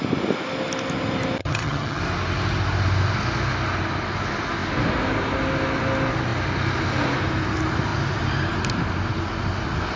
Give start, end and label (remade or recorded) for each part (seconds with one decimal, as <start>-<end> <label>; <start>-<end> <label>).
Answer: 0.0-1.4 recorded; 1.4-2.0 remade; 2.0-10.0 recorded